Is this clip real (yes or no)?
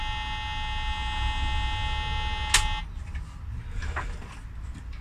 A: yes